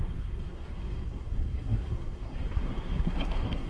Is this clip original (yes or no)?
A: no